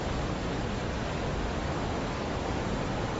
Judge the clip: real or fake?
fake